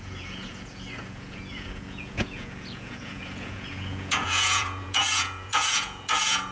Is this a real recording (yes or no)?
no